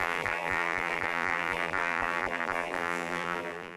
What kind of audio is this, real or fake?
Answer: fake